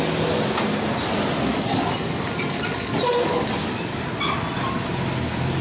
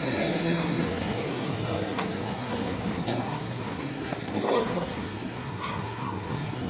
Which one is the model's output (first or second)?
second